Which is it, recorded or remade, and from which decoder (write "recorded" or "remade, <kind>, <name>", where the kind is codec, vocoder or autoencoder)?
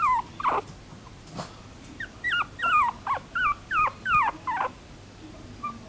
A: recorded